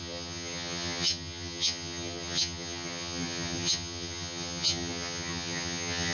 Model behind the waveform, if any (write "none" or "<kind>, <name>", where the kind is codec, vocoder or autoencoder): vocoder, HiFi-GAN